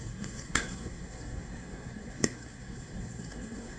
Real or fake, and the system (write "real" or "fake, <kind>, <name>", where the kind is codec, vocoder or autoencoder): fake, codec, SNAC